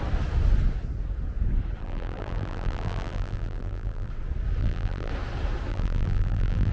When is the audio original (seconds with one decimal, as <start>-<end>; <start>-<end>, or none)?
0.0-1.8; 4.1-4.6; 5.1-5.7